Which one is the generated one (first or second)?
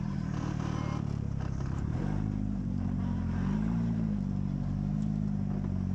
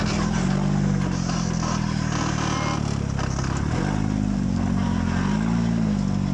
first